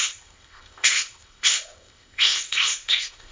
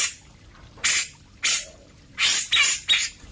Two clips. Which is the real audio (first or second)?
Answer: second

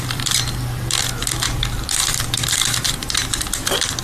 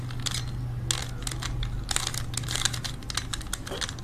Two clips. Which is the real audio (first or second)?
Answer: second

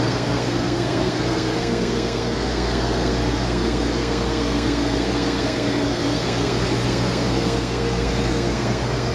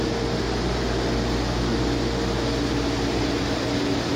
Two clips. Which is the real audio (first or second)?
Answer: second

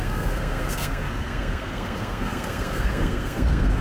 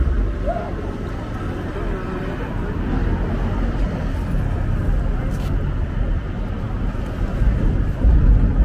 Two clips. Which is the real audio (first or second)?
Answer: second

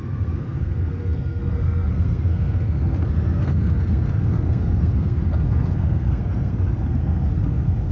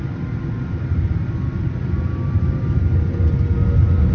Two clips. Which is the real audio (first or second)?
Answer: second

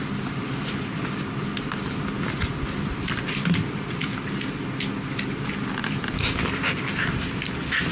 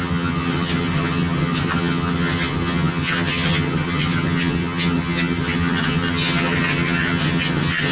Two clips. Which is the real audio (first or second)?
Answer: first